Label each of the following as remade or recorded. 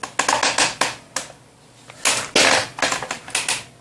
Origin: recorded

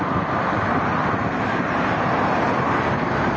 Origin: recorded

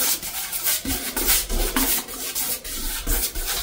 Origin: remade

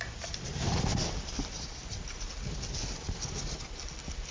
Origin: remade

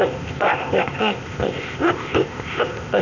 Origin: remade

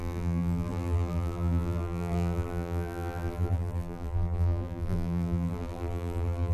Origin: remade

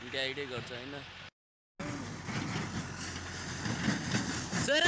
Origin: recorded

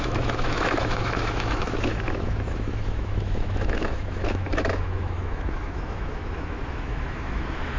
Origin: remade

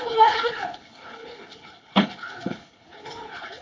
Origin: remade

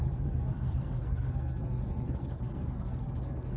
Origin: remade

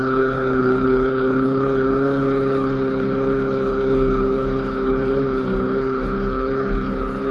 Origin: remade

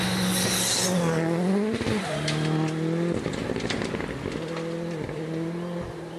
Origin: recorded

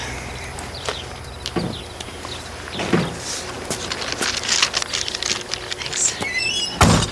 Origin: recorded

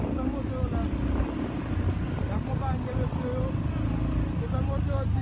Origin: recorded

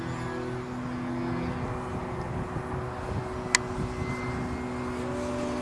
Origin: recorded